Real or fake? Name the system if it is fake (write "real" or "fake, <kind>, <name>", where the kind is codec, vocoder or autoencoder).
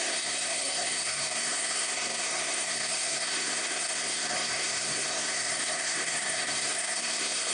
fake, codec, SNAC